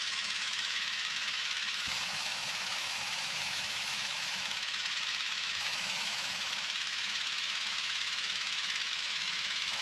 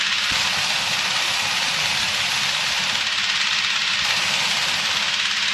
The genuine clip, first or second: second